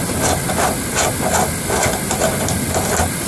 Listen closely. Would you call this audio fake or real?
real